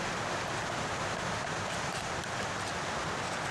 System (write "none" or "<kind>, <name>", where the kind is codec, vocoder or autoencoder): none